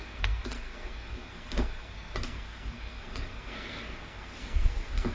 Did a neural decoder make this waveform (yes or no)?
yes